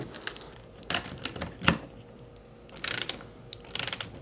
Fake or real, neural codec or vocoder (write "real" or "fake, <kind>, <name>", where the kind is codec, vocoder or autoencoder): real